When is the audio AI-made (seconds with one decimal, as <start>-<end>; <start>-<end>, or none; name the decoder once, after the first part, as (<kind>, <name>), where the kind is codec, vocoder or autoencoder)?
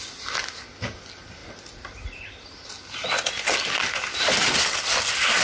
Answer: none